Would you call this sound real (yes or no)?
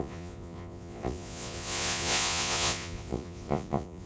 no